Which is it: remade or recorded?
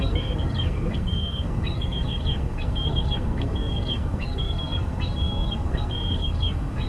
remade